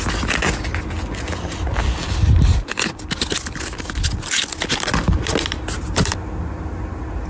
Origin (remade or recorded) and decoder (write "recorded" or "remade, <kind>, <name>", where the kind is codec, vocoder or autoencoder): recorded